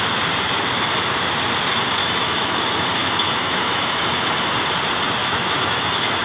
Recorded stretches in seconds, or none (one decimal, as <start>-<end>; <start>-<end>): 0.0-2.0; 2.6-3.0; 4.0-5.2